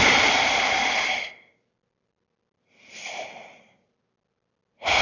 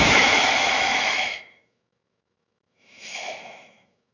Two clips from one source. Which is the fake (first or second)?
second